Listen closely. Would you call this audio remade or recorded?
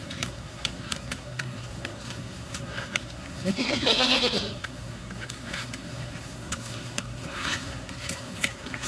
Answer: remade